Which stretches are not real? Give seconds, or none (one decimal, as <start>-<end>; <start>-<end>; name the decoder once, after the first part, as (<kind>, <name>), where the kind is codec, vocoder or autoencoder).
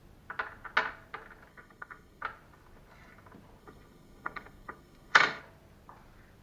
1.5-2.2 (codec, SNAC); 3.6-5.4